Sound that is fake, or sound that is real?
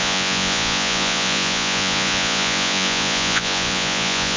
fake